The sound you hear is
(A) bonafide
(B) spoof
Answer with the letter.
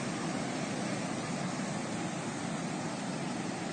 A